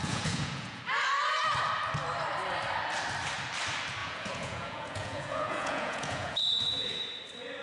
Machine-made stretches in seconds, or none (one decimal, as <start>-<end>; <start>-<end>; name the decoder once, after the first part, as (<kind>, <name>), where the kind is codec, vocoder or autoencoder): 0.0-0.8 (vocoder, Vocos); 4.0-7.0